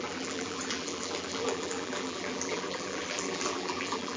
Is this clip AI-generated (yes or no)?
yes